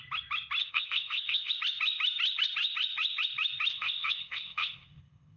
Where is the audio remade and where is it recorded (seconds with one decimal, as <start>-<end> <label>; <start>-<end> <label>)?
0.0-0.6 recorded; 0.6-1.5 remade; 1.5-3.7 recorded; 3.7-5.4 remade